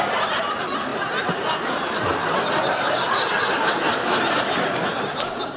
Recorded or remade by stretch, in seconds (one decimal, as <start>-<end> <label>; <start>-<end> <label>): 0.0-5.6 recorded